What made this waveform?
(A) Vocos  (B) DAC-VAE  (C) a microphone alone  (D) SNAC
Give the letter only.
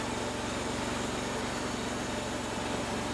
C